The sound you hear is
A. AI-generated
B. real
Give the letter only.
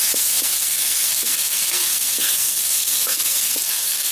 A